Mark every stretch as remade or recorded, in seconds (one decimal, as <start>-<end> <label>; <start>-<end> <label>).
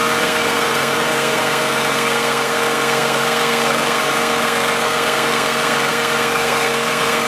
0.0-7.3 remade